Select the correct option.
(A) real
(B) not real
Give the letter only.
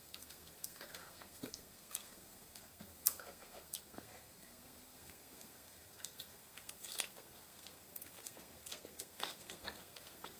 B